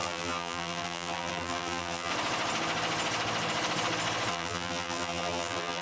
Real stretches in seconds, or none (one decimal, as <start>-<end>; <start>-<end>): 2.1-4.3